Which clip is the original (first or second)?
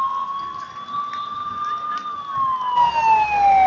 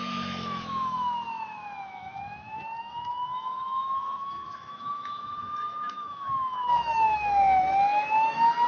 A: first